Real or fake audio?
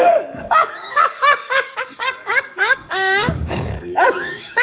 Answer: fake